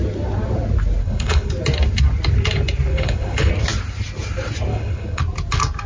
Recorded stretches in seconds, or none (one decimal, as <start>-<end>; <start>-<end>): 0.0-1.0; 1.5-2.9; 3.5-4.7; 5.2-5.9